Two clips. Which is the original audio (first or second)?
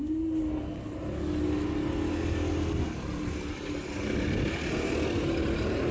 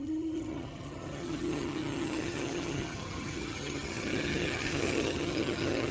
first